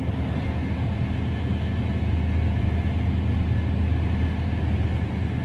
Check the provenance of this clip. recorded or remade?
recorded